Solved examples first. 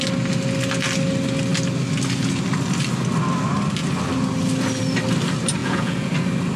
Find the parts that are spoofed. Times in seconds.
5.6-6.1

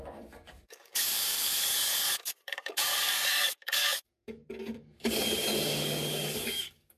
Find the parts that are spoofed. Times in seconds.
0.0-7.0

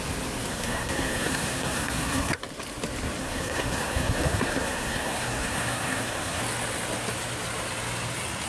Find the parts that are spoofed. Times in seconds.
0.5-2.4; 3.2-6.4